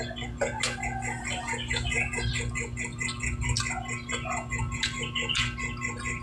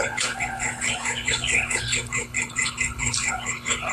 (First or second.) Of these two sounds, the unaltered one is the first